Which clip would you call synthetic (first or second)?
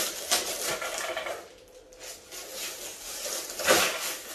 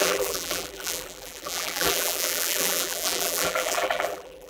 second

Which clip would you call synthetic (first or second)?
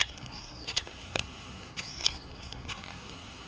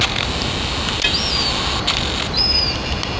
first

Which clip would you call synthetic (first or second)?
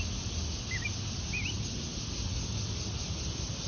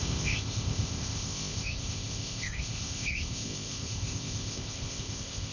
second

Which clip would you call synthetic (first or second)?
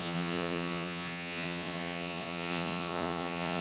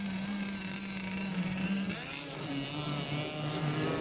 first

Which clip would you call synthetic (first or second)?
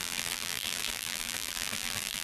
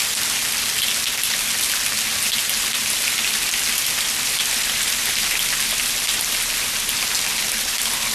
first